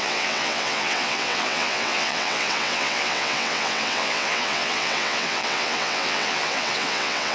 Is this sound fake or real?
fake